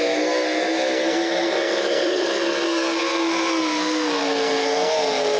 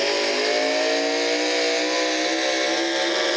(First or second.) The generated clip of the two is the first